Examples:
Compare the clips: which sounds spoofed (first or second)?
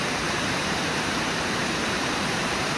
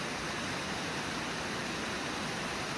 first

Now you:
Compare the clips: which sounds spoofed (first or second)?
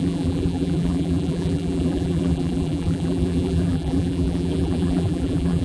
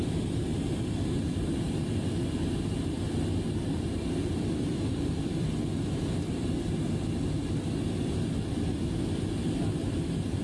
first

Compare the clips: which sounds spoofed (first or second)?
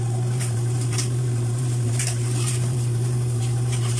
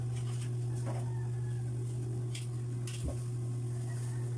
first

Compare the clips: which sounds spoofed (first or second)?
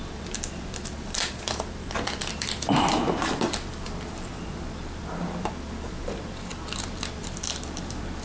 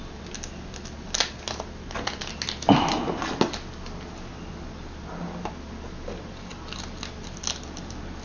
first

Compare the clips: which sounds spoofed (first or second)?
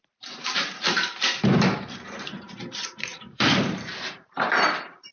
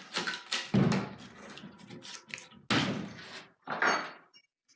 first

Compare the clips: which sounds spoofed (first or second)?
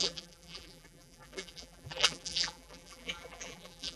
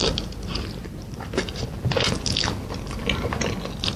first